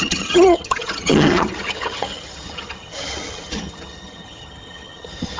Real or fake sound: fake